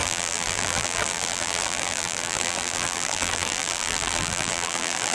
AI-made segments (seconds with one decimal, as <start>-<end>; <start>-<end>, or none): 0.0-5.1